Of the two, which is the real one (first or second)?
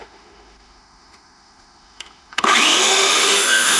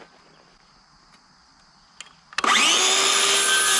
second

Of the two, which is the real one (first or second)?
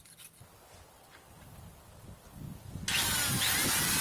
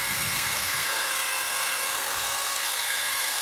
first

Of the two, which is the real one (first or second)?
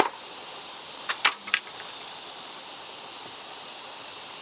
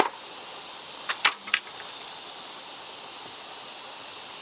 second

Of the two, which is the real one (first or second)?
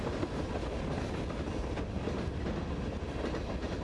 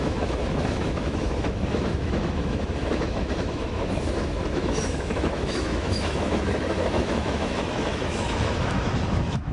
first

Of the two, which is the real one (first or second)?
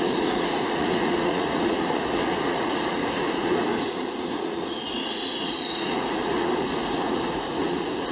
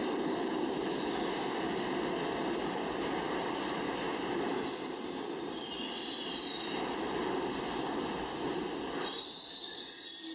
second